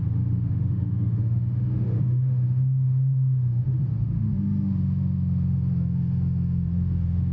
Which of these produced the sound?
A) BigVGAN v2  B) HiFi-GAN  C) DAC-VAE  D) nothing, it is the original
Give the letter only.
C